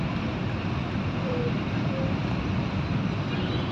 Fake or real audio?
fake